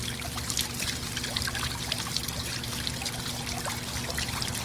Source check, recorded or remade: recorded